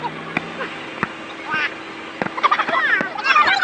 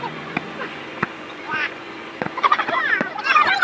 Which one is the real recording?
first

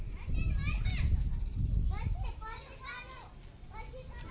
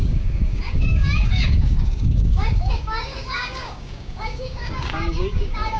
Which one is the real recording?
first